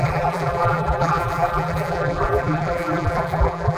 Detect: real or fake fake